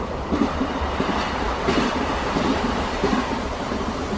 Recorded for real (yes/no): no